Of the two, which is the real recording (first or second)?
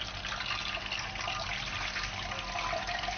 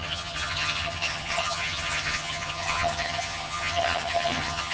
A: first